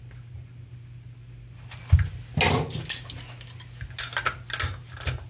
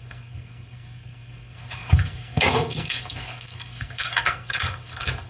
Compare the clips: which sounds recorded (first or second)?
first